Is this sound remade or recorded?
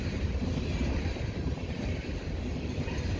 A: recorded